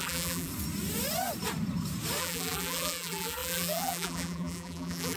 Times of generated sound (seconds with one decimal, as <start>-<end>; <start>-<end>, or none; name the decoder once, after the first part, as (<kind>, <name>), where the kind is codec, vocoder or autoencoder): 0.0-0.5 (vocoder, BigVGAN v2); 2.2-5.2